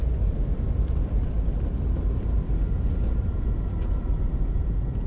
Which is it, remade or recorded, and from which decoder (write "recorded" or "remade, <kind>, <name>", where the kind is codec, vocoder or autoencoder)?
remade, vocoder, BigVGAN v2